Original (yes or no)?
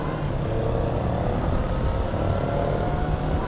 yes